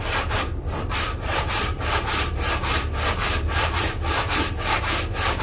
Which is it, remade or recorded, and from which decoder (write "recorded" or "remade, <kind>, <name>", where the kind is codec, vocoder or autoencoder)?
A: remade, vocoder, BigVGAN v2